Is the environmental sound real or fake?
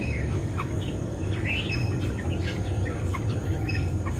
fake